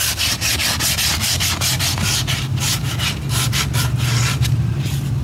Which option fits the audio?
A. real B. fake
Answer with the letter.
A